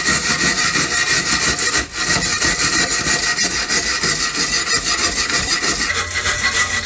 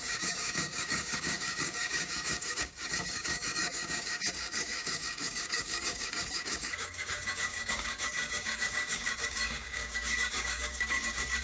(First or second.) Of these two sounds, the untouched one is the first